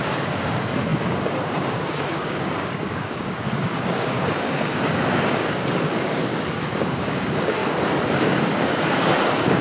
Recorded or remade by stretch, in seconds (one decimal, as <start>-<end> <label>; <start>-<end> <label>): 0.0-7.6 remade; 7.6-8.2 recorded; 8.2-9.6 remade